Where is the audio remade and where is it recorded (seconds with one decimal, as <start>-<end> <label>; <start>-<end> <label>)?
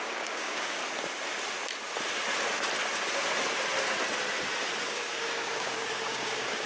0.0-0.8 remade; 0.8-4.8 recorded; 4.8-6.7 remade